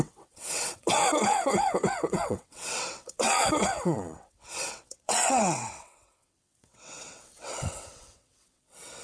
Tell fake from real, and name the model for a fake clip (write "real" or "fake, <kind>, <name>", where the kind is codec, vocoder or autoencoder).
fake, vocoder, WaveNeXt